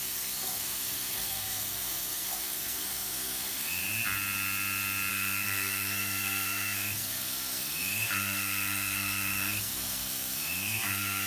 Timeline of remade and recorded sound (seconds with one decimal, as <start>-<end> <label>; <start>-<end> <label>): 0.0-3.8 remade; 3.8-5.1 recorded; 5.1-11.3 remade